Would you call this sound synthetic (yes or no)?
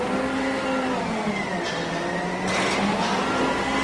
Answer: no